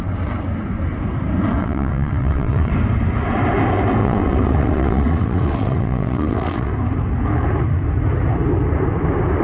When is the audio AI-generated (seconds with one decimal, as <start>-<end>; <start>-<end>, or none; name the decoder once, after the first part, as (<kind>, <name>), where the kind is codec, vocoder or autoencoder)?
1.6-2.7 (vocoder, WaveNeXt); 4.0-6.7